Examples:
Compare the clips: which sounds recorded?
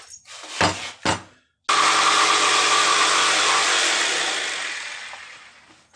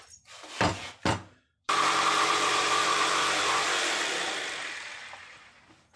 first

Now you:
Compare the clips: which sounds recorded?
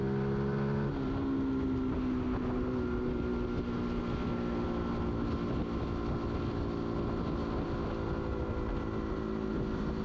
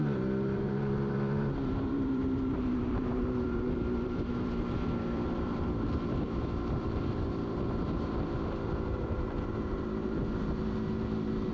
first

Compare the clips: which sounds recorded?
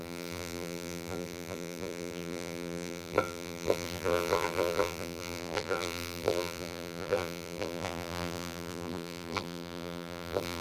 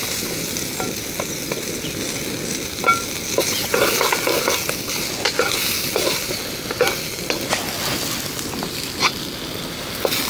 second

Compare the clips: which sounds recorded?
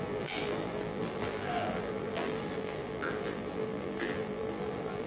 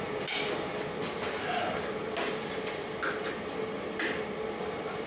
second